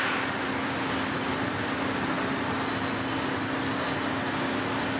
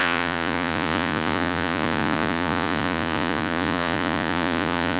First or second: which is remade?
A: second